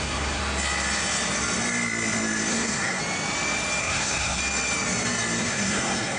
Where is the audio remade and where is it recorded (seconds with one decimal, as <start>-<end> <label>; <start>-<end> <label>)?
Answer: 0.0-0.4 remade; 0.4-2.5 recorded; 2.5-3.0 remade; 3.0-3.8 recorded; 3.8-4.4 remade; 4.4-5.4 recorded; 5.4-6.2 remade